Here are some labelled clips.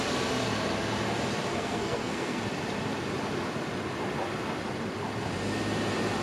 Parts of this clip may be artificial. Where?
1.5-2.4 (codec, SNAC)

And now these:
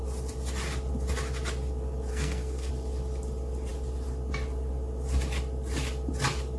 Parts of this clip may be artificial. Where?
2.1-2.7 (codec, SNAC)